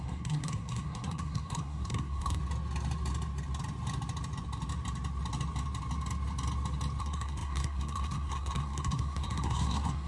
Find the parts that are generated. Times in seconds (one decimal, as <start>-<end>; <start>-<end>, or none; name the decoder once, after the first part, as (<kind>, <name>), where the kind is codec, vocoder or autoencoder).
0.0-2.4 (codec, SNAC); 7.0-10.1